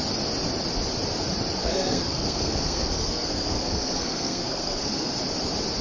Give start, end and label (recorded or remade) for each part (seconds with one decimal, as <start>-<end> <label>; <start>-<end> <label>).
0.0-1.6 recorded; 1.6-5.1 remade; 5.1-5.8 recorded